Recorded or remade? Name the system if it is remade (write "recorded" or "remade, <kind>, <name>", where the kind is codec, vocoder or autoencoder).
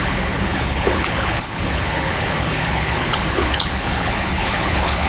remade, codec, HILCodec